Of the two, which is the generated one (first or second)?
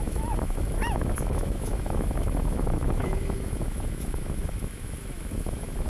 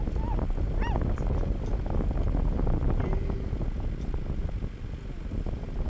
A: first